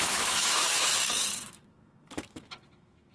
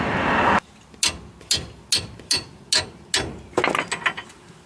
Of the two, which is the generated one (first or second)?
first